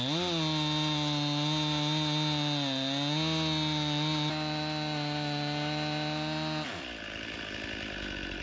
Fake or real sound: real